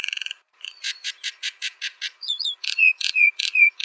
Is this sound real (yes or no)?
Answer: no